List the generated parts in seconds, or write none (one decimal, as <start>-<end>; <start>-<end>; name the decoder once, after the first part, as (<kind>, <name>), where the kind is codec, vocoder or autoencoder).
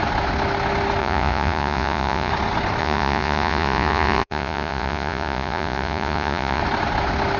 1.0-2.3 (vocoder, Vocos); 2.8-6.6